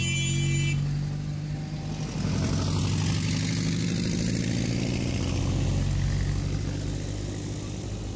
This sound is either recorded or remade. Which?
recorded